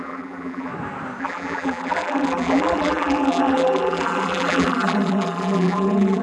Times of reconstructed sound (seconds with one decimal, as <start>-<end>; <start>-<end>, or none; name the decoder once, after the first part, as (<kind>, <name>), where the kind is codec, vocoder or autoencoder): 0.0-0.7 (vocoder, BigVGAN v2); 1.2-6.2